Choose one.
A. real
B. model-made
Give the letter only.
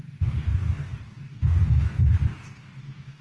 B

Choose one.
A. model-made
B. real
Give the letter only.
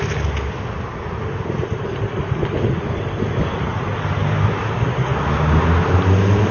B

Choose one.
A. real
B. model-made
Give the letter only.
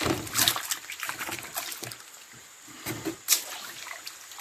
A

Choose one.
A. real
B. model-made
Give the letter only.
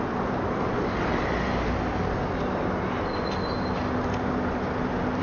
A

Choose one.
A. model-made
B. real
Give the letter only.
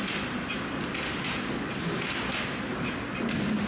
B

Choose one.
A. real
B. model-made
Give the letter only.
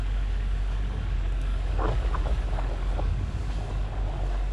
B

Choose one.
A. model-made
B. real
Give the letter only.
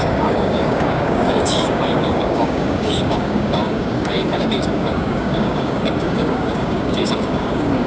A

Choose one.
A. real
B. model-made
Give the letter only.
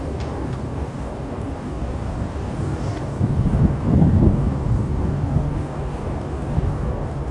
B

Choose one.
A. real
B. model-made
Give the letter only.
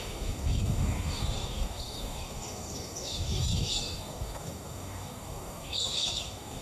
B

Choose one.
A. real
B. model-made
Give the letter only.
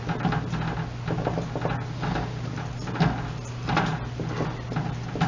A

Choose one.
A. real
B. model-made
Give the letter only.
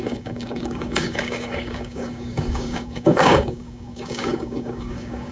B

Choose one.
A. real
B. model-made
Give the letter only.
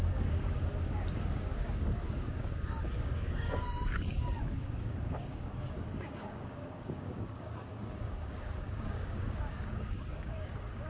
B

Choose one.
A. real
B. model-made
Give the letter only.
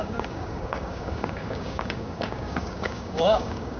B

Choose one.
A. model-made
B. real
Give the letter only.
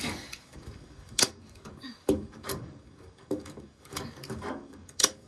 A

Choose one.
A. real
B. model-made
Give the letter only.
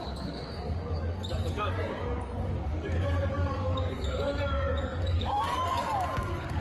B